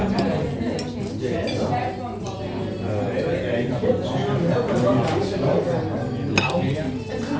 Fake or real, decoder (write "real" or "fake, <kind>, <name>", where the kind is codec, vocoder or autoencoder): real